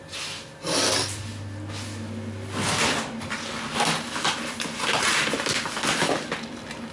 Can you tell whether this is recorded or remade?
recorded